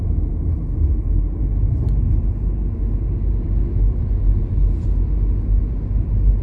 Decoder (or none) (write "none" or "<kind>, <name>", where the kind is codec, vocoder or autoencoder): none